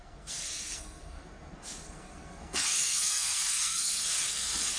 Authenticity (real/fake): fake